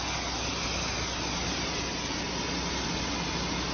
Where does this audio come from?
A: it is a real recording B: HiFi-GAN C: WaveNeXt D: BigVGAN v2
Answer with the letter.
A